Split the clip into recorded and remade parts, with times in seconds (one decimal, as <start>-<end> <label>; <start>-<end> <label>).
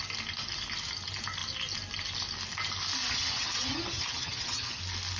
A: 0.0-3.1 recorded; 3.1-4.8 remade; 4.8-5.2 recorded